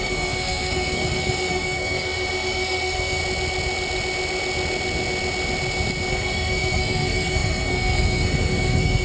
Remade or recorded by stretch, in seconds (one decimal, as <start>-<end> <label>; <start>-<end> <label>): 0.0-3.2 remade; 3.2-6.1 recorded; 6.1-9.0 remade